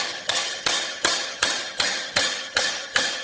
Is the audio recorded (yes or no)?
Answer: no